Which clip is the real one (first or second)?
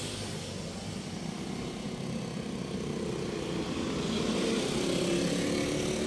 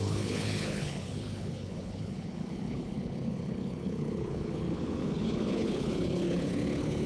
first